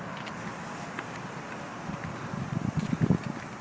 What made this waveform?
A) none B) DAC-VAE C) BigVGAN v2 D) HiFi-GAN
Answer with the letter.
A